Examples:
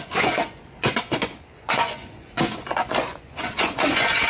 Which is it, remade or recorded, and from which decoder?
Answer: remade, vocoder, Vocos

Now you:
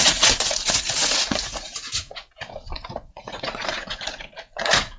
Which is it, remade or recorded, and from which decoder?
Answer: remade, vocoder, Vocos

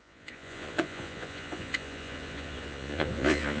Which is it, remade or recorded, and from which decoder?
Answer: remade, vocoder, Vocos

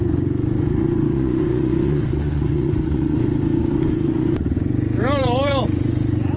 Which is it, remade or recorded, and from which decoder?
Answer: remade, vocoder, Vocos